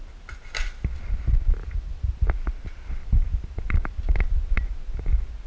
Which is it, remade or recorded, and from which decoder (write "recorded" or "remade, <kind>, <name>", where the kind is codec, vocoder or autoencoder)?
recorded